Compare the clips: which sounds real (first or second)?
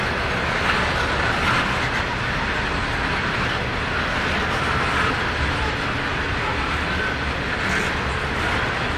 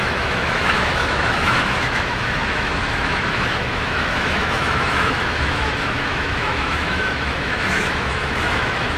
first